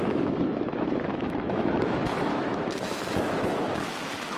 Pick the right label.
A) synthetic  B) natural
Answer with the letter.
A